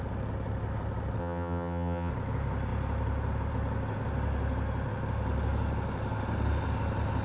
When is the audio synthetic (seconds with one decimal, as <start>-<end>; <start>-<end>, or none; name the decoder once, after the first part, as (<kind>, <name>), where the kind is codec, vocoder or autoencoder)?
1.2-2.1 (vocoder, HiFi-GAN)